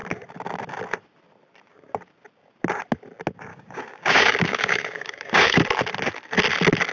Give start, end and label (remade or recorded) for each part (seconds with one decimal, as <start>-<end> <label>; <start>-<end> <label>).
0.0-3.5 recorded; 3.5-5.6 remade; 5.6-6.9 recorded